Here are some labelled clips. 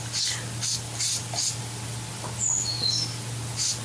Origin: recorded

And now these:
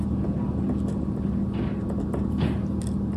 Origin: recorded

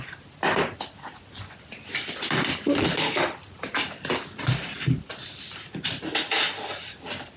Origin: remade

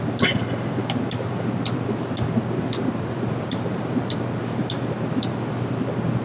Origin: recorded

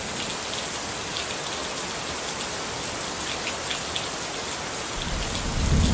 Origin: recorded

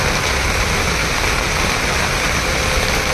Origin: recorded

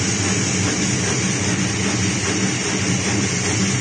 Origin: recorded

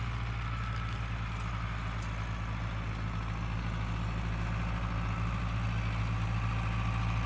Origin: recorded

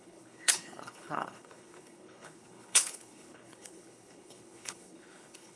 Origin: remade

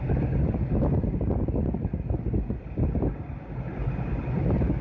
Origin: recorded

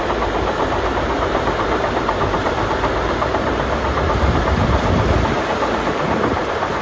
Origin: remade